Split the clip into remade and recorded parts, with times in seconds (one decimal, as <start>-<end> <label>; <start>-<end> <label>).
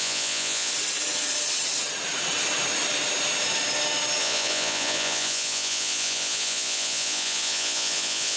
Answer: 0.0-0.7 remade; 0.7-4.2 recorded; 4.2-8.4 remade